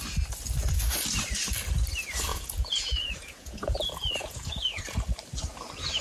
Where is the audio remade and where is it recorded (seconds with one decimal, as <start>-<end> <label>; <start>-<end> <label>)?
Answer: 0.0-2.3 recorded; 2.3-4.8 remade; 4.8-6.0 recorded